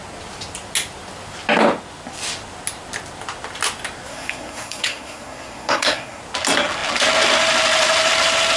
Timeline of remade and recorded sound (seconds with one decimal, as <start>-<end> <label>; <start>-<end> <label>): 0.0-4.1 recorded; 4.1-6.2 remade; 6.2-8.6 recorded